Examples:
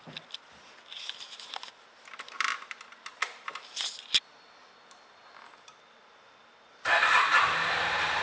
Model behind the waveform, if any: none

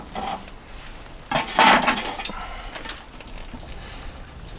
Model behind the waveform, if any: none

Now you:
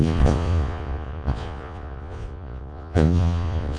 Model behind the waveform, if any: vocoder, Vocos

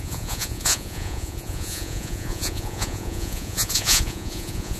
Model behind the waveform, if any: vocoder, Vocos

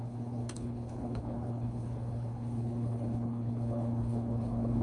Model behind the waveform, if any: codec, HILCodec